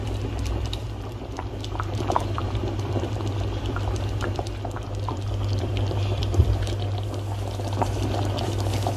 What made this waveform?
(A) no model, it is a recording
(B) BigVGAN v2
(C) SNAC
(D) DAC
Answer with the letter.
B